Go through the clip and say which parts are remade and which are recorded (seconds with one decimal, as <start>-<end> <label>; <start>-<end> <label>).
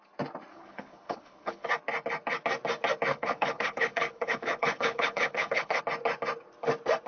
0.0-0.5 recorded; 0.5-1.7 remade; 1.7-3.1 recorded; 3.1-5.8 remade; 5.8-7.1 recorded